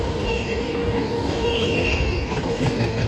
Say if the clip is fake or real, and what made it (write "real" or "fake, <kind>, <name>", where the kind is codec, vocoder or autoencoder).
fake, codec, DAC